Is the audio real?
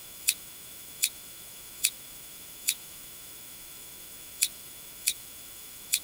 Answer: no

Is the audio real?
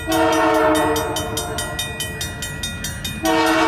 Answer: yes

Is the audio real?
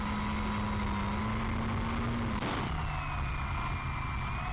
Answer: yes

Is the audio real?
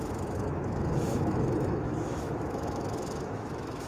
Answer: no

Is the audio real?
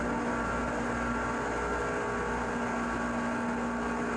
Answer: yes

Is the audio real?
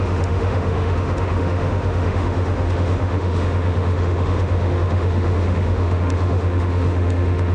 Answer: no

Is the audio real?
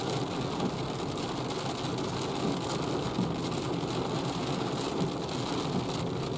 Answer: yes